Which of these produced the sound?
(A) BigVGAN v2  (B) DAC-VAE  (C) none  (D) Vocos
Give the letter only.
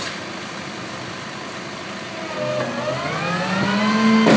C